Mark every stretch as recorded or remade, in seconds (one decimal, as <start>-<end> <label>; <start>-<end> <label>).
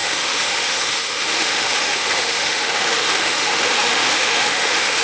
0.0-5.0 remade